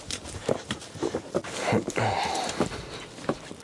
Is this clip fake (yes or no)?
yes